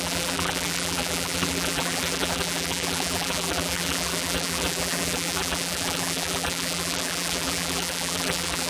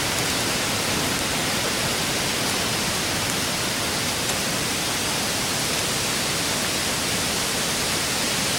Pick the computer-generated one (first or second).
first